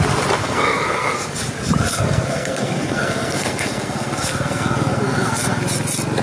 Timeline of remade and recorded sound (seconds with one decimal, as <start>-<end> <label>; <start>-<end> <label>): 0.0-0.4 recorded; 0.4-1.3 remade; 1.3-1.9 recorded; 1.9-5.6 remade; 5.6-6.2 recorded